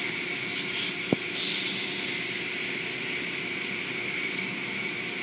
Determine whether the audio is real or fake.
real